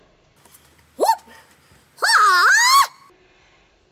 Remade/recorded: recorded